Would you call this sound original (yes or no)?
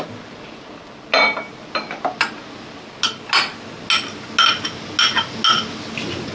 yes